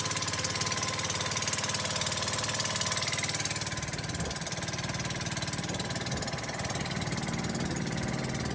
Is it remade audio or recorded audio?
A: recorded